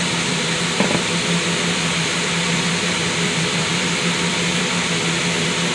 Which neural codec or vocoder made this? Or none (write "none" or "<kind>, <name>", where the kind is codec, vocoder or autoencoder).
vocoder, BigVGAN v2